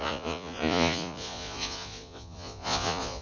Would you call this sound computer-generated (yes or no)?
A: yes